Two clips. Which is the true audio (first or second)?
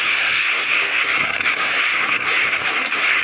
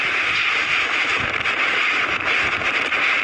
second